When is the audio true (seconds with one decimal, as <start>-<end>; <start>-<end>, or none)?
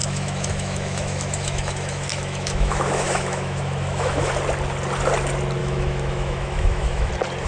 4.3-5.6; 7.1-7.5